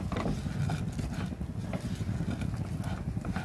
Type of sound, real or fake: real